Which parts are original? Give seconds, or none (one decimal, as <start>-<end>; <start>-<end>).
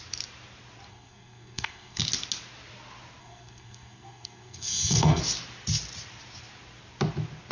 0.0-0.9; 2.0-3.2; 5.2-7.5